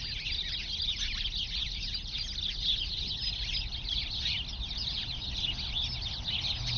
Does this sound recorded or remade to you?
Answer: recorded